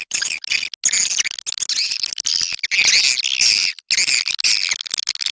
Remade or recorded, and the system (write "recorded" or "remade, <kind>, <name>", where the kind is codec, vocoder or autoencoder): recorded